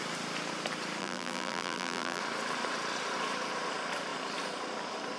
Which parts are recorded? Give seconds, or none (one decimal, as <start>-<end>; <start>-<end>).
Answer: 0.0-1.0; 2.2-5.2